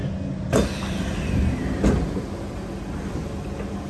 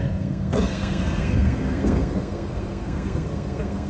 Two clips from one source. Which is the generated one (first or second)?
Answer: second